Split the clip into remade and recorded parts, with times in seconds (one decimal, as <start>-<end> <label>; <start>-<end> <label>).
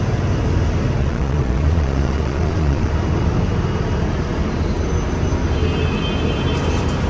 0.0-1.0 recorded; 1.0-2.9 remade; 2.9-7.1 recorded